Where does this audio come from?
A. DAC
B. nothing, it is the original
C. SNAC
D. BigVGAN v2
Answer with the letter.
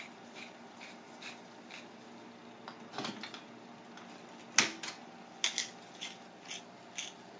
B